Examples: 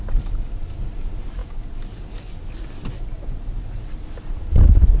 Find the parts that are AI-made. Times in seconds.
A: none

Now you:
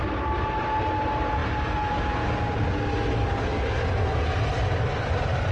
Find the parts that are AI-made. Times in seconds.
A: none

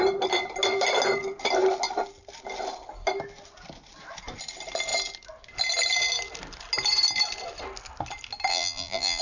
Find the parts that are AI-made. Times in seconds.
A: 8.5-9.2 (vocoder, BigVGAN v2)

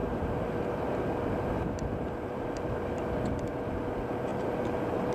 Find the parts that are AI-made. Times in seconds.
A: 0.0-3.1 (vocoder, BigVGAN v2); 4.3-5.1

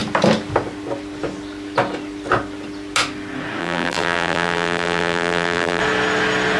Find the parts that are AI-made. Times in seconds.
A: 3.6-5.8 (vocoder, BigVGAN v2)

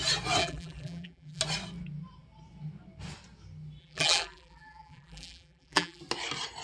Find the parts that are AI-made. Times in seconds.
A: 0.4-1.4 (vocoder, BigVGAN v2); 3.8-6.0